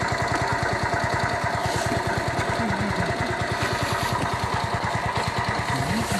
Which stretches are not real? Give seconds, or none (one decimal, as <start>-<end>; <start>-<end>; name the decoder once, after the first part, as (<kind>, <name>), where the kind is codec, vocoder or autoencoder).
none